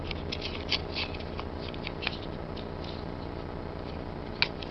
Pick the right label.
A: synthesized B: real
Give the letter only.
B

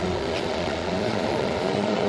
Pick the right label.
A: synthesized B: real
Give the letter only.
A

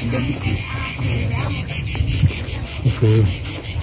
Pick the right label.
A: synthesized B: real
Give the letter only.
A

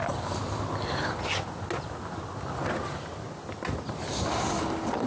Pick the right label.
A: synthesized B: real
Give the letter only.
B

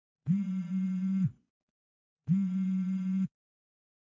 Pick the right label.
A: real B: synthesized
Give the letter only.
B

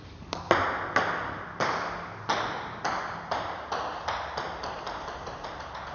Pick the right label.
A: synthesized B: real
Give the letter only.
B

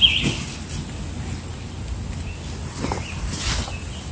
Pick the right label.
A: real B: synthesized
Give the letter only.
A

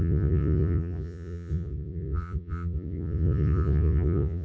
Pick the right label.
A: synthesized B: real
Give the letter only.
A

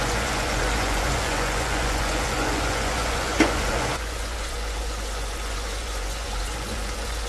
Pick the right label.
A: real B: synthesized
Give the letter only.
B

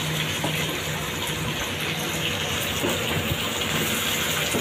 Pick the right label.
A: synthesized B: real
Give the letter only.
B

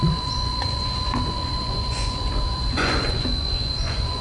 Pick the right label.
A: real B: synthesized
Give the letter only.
B